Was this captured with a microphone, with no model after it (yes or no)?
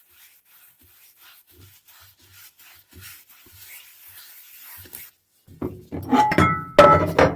yes